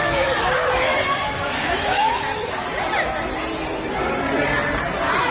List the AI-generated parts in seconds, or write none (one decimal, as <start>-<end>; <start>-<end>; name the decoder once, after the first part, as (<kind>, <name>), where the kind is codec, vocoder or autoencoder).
0.0-2.2 (autoencoder, DAC-VAE)